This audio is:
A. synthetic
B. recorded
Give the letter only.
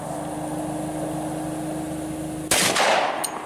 B